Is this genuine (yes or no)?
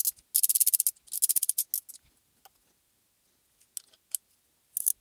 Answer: yes